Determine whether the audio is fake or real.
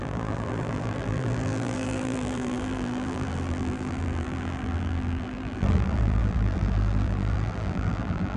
fake